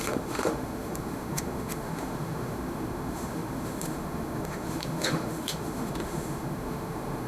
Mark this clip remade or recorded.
remade